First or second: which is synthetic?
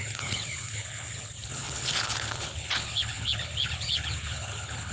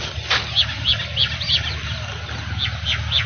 first